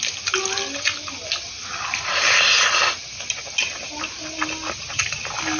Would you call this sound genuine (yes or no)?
yes